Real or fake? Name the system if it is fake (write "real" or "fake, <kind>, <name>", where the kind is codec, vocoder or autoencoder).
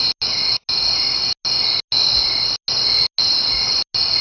real